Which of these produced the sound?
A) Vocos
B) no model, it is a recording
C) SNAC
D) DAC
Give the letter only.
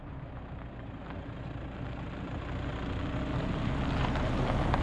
B